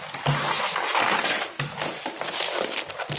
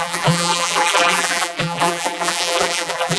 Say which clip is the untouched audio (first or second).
first